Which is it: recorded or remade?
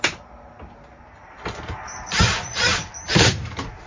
recorded